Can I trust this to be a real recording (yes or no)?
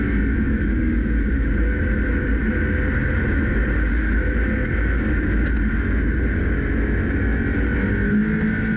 yes